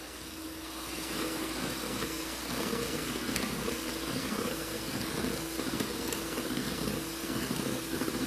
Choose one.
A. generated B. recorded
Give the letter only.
A